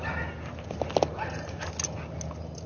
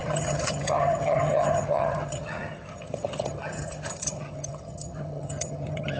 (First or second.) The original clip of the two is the first